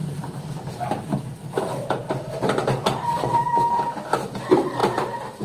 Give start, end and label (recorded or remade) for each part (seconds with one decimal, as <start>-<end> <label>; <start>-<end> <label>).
0.0-1.4 remade; 1.4-1.9 recorded; 1.9-5.4 remade

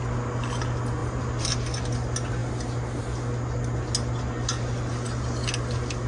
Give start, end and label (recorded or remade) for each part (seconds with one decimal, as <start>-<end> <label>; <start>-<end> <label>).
0.0-1.0 recorded; 1.0-1.5 remade; 1.5-6.1 recorded

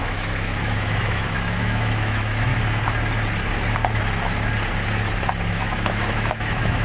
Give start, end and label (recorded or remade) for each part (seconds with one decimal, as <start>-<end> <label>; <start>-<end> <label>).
0.0-2.5 remade; 2.5-5.5 recorded; 5.5-6.8 remade

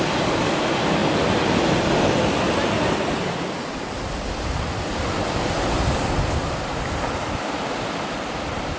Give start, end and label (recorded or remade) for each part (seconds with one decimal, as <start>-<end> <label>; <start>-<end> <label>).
0.0-8.8 recorded